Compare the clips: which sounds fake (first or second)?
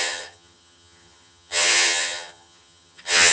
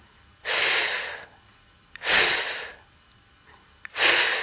first